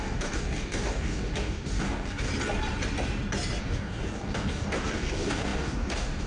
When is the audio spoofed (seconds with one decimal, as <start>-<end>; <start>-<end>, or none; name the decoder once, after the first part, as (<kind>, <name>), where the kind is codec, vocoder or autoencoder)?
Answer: 0.0-2.3 (codec, DAC); 3.6-6.3